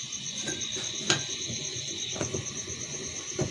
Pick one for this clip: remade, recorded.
remade